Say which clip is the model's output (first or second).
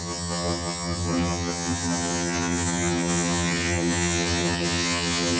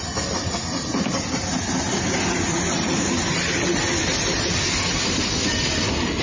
first